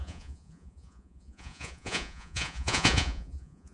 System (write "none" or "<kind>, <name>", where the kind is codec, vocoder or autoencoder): vocoder, Vocos